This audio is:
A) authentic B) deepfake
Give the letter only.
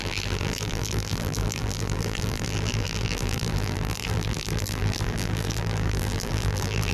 B